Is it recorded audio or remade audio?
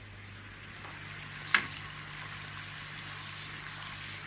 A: recorded